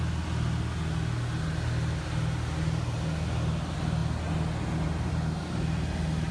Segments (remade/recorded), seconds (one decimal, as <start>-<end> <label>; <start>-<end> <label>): 0.0-6.3 recorded